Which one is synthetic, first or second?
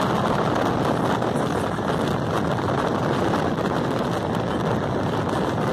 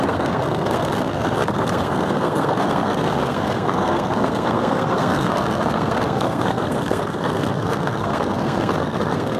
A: second